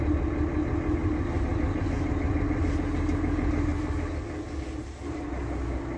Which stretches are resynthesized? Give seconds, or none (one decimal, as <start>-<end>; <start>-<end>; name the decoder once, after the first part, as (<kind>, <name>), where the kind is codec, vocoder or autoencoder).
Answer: none